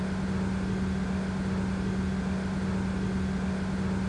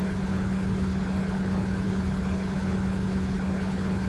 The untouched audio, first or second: first